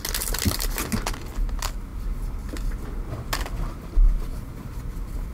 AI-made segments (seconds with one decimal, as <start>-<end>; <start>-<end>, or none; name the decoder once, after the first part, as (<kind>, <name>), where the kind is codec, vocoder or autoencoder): none